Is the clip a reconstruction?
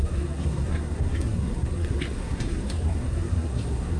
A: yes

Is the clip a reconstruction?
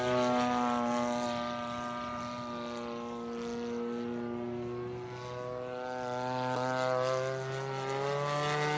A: no